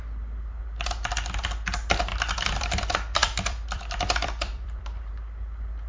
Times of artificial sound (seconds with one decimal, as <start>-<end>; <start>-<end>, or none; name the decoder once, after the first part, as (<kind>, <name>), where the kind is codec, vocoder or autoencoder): 2.1-5.1 (vocoder, BigVGAN v2)